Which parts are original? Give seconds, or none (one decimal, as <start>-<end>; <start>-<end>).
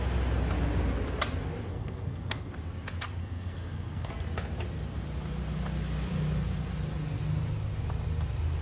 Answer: 0.0-1.7; 2.5-3.2; 4.1-8.6